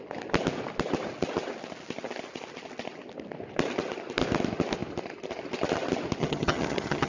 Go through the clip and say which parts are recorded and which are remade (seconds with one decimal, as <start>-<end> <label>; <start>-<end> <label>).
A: 0.0-6.2 recorded; 6.2-7.1 remade